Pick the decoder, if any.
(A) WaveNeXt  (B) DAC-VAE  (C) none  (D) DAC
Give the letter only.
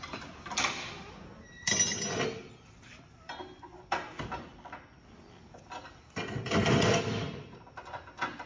C